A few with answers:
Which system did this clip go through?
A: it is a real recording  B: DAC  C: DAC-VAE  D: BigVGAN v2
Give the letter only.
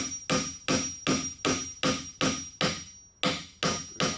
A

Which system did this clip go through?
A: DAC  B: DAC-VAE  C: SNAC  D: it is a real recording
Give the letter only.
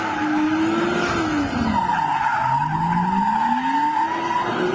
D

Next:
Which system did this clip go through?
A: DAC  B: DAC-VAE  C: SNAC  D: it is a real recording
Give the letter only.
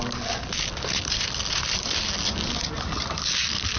D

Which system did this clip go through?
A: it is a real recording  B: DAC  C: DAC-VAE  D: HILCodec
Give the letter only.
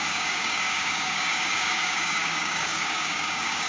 B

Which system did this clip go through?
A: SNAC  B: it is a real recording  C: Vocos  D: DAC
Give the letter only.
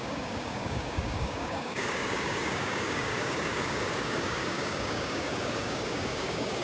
D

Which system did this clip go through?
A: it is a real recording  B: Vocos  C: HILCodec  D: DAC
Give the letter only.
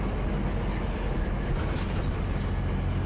A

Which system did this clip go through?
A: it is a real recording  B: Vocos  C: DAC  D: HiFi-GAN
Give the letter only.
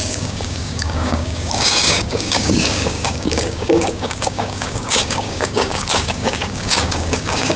C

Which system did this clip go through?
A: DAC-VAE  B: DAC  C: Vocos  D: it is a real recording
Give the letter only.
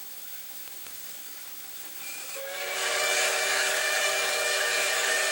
B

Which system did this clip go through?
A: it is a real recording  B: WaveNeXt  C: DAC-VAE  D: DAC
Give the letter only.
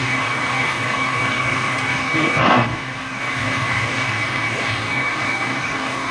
D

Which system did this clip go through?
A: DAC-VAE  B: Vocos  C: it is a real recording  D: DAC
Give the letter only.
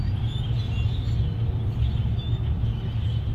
C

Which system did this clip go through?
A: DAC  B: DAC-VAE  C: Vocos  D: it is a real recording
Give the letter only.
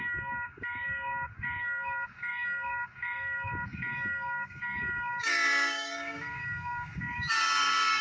A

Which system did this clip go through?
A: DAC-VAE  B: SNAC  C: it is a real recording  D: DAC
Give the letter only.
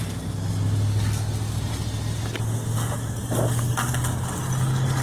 C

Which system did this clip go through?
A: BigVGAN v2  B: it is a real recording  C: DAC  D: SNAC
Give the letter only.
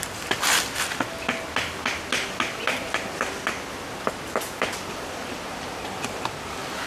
B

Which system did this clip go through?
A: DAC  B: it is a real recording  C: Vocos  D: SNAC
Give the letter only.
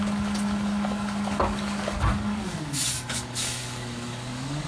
A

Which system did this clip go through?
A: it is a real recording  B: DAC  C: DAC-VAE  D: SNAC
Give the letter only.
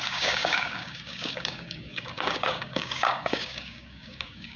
B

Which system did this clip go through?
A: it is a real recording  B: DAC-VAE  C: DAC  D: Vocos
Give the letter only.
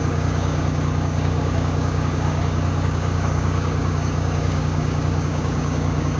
C